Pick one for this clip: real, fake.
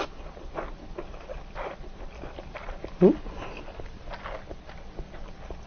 real